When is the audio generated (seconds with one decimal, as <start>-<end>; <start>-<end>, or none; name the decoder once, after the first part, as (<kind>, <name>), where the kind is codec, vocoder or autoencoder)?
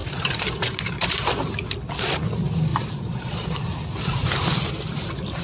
0.0-1.3 (vocoder, BigVGAN v2); 2.7-4.7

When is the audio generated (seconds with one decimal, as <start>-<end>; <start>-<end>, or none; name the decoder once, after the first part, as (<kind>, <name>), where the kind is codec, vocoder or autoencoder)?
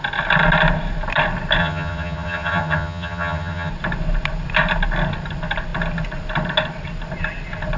1.6-3.7 (vocoder, HiFi-GAN)